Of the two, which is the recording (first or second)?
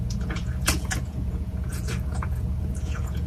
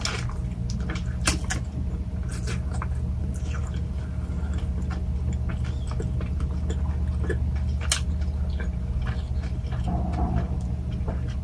second